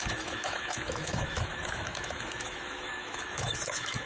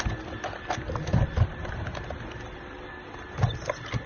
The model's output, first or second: first